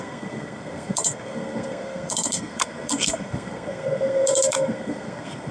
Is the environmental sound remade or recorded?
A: remade